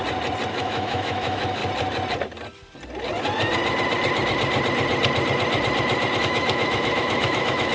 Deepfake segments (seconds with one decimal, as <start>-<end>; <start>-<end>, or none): 0.5-1.6; 6.2-7.7